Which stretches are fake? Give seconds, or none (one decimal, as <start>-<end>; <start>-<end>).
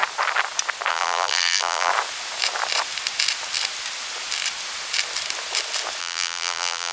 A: 0.9-1.9; 6.0-6.9